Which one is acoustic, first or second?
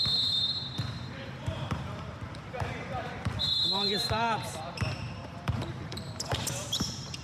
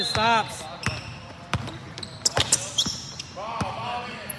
second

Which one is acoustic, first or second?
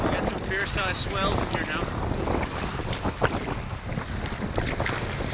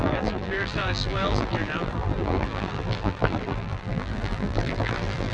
first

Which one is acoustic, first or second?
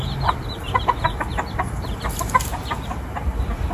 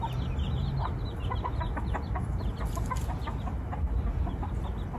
second